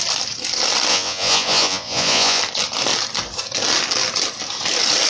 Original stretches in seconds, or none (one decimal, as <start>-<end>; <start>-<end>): 0.0-0.9; 2.4-5.1